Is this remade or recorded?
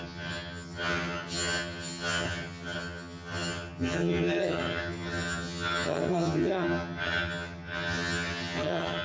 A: remade